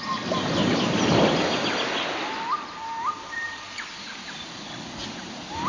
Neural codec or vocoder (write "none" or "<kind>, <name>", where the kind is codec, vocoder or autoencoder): none